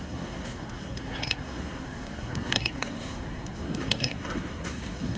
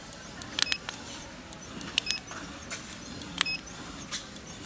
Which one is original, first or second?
second